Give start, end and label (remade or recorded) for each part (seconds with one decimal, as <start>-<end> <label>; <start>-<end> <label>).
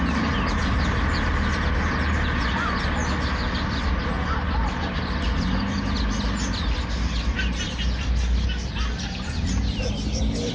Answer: 0.0-10.5 recorded